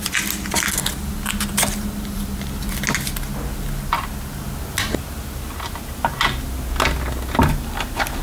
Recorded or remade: recorded